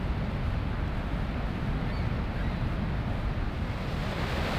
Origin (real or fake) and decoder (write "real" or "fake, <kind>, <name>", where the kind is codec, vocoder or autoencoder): real